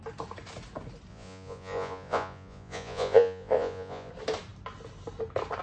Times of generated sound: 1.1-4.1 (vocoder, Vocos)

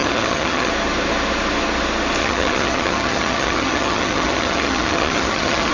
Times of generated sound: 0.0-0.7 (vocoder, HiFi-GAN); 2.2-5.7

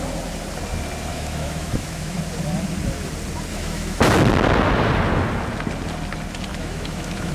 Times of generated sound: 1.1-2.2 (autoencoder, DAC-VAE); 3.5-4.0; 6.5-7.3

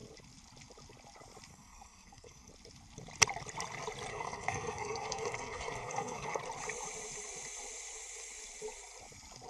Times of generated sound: 1.5-2.5 (codec, SNAC); 4.1-6.4